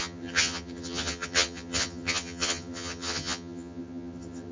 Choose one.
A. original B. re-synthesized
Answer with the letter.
B